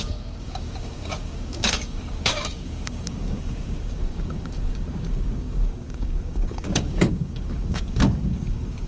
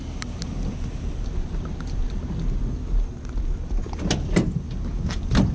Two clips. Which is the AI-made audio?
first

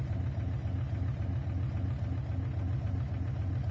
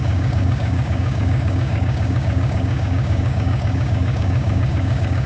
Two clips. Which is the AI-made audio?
second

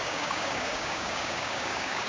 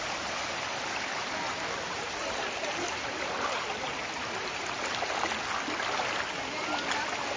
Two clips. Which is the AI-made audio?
first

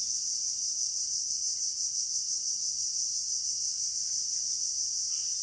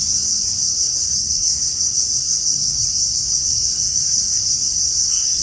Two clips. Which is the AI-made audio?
second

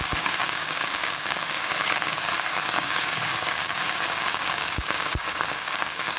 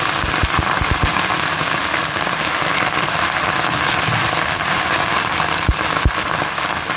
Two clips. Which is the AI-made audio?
first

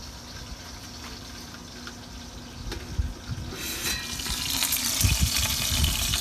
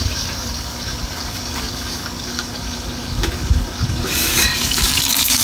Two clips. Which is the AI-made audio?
second